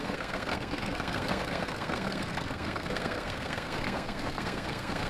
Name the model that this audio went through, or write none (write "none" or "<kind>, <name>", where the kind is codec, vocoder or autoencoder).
codec, SNAC